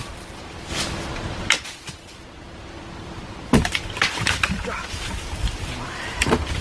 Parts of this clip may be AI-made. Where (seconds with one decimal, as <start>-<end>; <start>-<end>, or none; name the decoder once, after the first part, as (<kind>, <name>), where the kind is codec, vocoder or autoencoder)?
0.7-1.5 (vocoder, BigVGAN v2); 3.5-6.6